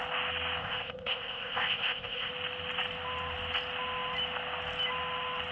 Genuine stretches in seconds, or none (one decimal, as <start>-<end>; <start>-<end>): 0.0-0.6; 2.3-5.5